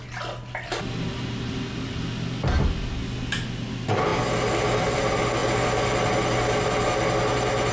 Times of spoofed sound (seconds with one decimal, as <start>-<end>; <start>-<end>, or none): none